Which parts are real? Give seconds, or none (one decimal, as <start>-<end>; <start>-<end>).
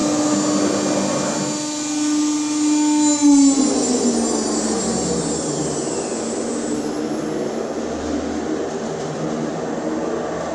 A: 0.0-10.5